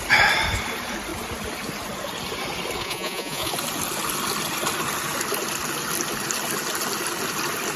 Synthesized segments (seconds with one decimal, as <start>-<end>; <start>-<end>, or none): 2.8-3.5